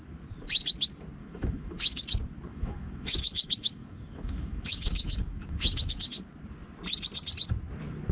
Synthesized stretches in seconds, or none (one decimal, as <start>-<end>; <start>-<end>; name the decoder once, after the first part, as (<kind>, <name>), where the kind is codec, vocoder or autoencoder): 1.2-2.0 (autoencoder, DAC-VAE); 2.5-6.2